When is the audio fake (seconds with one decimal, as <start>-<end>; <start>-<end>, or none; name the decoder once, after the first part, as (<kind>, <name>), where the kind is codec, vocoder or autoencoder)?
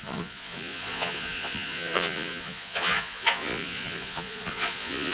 0.0-5.1 (vocoder, Vocos)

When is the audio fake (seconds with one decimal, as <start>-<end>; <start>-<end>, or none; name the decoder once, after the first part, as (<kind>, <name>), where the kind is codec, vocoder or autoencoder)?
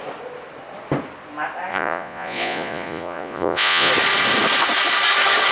1.7-3.9 (vocoder, Vocos)